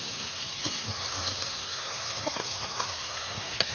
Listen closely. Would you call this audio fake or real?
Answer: fake